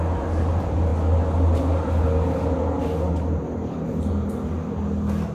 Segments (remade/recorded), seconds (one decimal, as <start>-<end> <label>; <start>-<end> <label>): 0.0-5.3 recorded